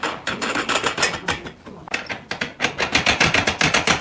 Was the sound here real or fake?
real